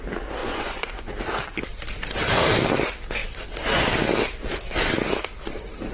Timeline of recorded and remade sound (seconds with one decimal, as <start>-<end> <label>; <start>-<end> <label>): 0.0-0.4 recorded; 0.4-1.1 remade; 1.1-5.9 recorded